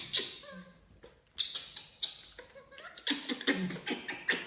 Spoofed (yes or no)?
no